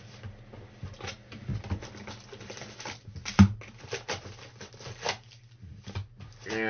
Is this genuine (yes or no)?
yes